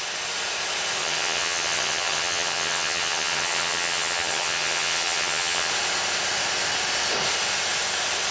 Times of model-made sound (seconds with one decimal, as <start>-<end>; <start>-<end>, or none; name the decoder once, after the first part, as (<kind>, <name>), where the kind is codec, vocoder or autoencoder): 1.0-5.7 (vocoder, HiFi-GAN)

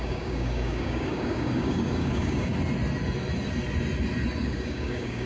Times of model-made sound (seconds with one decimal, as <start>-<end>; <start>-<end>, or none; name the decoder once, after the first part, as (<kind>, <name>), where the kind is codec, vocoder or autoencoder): 0.0-2.5 (codec, DAC); 4.4-5.3

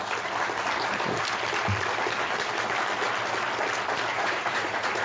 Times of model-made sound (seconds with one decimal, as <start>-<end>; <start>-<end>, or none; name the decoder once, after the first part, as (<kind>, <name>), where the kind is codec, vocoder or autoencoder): 4.1-5.0 (vocoder, Vocos)

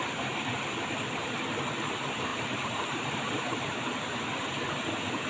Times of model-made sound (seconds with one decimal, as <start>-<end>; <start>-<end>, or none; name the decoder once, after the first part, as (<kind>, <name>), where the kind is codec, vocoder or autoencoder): 2.3-4.2 (vocoder, BigVGAN v2)

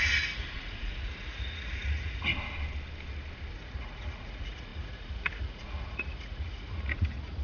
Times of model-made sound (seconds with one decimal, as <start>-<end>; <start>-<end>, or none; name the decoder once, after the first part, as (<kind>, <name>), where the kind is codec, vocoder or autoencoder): 0.0-2.3 (vocoder, Vocos); 3.5-7.4

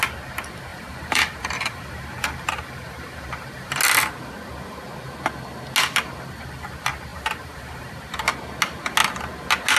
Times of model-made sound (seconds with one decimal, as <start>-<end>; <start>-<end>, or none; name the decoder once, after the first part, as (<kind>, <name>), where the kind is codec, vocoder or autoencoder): 0.7-3.8 (vocoder, BigVGAN v2); 7.1-7.9

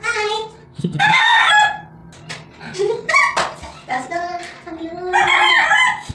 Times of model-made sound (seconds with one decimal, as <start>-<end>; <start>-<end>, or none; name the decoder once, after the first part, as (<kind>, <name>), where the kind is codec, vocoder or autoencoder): 0.6-1.5 (codec, SNAC)